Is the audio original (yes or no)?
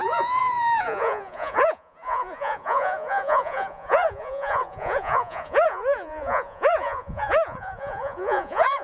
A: no